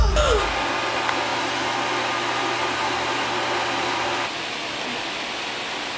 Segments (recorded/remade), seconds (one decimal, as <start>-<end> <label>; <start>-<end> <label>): 0.0-6.0 recorded